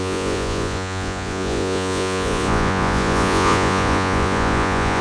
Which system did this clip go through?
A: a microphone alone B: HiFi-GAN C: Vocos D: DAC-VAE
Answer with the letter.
C